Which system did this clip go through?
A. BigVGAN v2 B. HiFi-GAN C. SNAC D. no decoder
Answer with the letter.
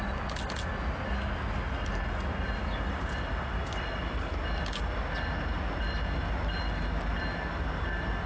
D